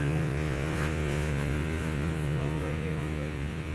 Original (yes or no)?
no